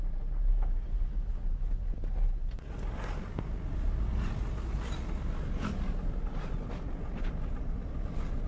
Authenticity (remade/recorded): recorded